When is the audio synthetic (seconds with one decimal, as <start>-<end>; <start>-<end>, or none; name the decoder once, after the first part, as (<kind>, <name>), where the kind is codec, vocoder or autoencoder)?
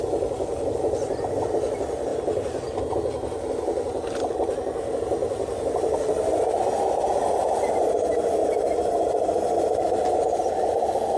2.1-2.9 (vocoder, BigVGAN v2); 8.4-10.5